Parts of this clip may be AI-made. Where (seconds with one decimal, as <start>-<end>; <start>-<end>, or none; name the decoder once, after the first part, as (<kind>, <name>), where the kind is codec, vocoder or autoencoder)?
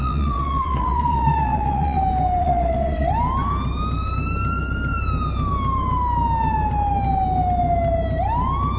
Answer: 0.0-2.0 (vocoder, Vocos); 2.4-3.1